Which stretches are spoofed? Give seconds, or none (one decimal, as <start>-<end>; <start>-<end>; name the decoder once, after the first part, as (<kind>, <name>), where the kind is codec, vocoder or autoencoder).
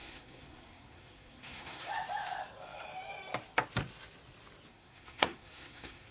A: 0.0-1.9 (codec, SNAC); 4.7-6.1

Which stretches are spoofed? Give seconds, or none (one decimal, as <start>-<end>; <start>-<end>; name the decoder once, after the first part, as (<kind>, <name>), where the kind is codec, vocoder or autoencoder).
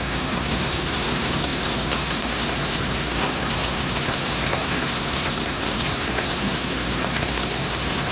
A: 0.0-8.1 (codec, SNAC)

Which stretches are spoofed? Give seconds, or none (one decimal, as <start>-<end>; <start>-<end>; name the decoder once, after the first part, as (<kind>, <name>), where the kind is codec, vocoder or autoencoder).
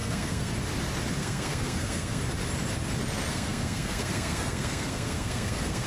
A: 0.0-0.5 (codec, SNAC); 1.2-2.2; 3.3-5.9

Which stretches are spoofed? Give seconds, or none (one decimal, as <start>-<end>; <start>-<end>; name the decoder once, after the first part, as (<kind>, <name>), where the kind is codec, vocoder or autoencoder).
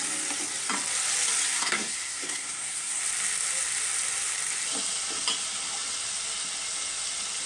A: 1.5-3.0 (codec, SNAC)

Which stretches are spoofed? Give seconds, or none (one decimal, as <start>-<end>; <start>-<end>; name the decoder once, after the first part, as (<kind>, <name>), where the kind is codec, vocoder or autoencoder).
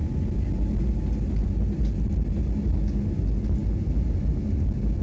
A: none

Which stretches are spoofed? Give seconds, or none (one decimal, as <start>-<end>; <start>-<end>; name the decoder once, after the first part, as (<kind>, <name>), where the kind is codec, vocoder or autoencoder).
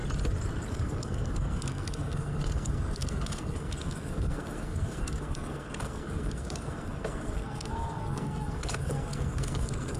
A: 0.7-10.0 (codec, SNAC)